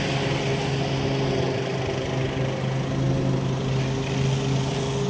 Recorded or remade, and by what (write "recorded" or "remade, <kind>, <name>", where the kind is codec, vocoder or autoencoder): recorded